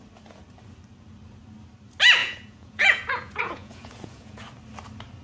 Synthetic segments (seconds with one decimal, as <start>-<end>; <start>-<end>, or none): 2.2-4.4